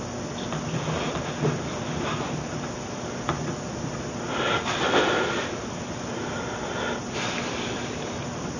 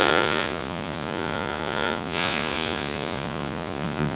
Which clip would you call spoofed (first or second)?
second